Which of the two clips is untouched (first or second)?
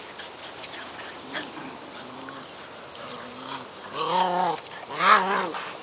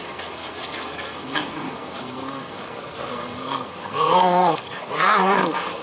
first